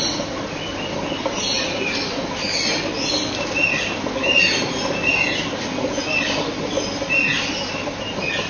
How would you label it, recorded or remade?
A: recorded